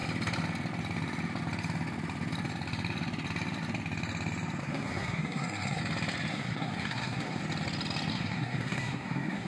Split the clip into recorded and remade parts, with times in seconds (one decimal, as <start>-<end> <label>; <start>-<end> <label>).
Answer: 0.0-4.6 recorded; 4.6-5.8 remade; 5.8-6.3 recorded; 6.3-7.4 remade; 7.4-8.1 recorded; 8.1-9.5 remade